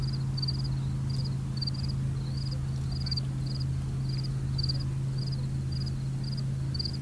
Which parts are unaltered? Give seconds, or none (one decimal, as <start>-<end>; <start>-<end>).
0.0-7.0